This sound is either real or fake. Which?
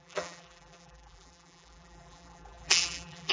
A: fake